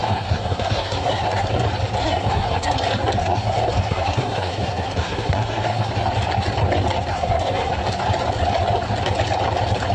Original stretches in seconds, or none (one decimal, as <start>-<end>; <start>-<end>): 1.5-2.0; 2.8-3.2; 5.9-7.1; 7.7-9.9